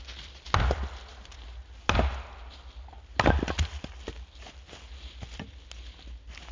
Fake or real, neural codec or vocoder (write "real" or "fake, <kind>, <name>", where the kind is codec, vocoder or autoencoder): real